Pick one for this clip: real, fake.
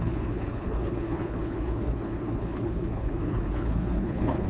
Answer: fake